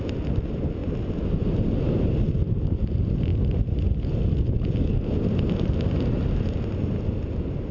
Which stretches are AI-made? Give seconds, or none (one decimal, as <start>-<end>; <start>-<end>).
none